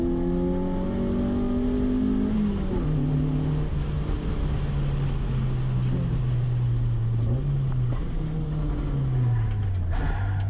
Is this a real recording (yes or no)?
yes